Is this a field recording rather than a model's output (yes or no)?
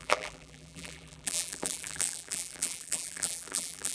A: no